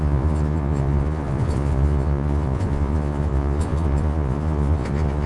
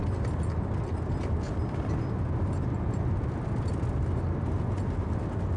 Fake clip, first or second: first